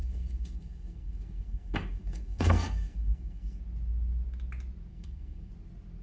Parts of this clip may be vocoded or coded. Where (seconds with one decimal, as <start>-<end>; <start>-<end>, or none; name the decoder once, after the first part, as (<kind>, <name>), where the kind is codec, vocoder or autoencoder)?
0.0-3.6 (codec, SNAC); 4.9-5.5